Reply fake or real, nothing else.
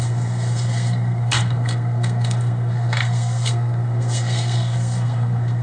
fake